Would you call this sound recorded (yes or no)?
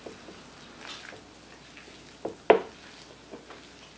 yes